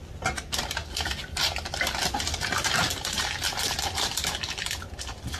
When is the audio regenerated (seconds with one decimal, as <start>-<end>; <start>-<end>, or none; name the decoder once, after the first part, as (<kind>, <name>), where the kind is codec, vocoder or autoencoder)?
0.0-0.8 (vocoder, BigVGAN v2); 1.4-5.4